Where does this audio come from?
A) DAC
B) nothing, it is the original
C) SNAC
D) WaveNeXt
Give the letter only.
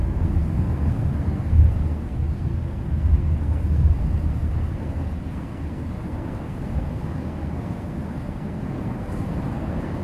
C